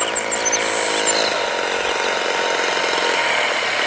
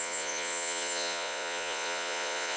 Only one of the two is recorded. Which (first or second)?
first